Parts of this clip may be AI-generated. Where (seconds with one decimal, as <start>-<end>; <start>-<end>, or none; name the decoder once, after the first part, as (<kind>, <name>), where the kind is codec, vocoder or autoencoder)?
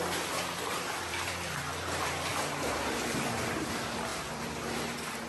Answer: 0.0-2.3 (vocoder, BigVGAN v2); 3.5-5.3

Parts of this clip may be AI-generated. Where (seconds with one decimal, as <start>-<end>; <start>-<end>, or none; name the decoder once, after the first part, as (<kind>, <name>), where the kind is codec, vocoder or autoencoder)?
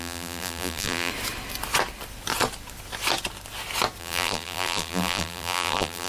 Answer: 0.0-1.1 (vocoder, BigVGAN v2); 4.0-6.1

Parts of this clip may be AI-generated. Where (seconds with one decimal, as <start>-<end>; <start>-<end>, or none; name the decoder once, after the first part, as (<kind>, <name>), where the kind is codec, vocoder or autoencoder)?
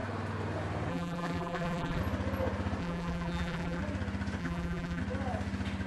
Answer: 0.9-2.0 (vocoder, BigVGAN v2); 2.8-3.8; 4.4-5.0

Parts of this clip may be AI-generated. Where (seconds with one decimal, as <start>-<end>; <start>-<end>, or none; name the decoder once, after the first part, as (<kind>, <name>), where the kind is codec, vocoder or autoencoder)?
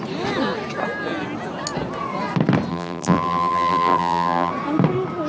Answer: 2.7-4.5 (vocoder, BigVGAN v2)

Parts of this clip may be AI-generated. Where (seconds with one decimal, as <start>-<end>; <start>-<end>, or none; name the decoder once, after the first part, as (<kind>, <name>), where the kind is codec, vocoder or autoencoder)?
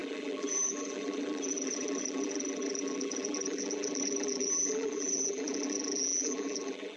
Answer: 0.0-7.0 (vocoder, BigVGAN v2)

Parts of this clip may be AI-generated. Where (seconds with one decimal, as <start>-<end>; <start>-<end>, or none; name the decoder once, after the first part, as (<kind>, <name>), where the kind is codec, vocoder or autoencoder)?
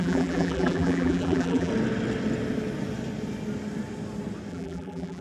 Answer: 0.0-1.7 (vocoder, BigVGAN v2); 4.5-5.2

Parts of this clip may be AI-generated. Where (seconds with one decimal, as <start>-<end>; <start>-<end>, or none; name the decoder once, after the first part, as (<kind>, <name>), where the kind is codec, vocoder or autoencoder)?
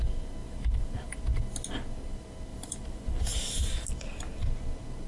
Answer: 0.4-1.1 (vocoder, BigVGAN v2); 2.5-3.9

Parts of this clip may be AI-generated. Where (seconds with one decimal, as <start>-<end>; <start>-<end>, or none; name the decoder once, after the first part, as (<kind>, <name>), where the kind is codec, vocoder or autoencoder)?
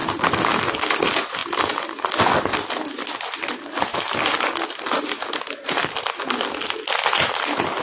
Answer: none